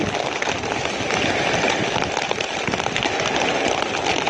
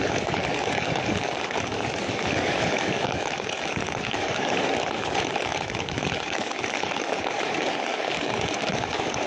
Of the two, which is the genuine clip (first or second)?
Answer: first